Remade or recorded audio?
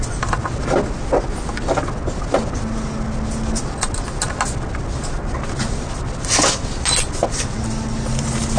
recorded